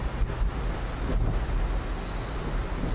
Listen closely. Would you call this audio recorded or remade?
recorded